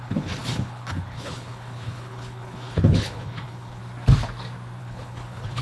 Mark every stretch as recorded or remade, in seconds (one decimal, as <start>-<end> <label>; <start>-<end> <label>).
0.0-3.8 remade; 3.8-4.8 recorded; 4.8-5.6 remade